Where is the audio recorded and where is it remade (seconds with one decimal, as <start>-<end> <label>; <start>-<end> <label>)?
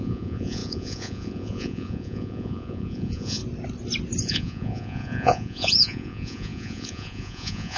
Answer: 0.0-3.4 remade; 3.4-4.2 recorded; 4.2-7.8 remade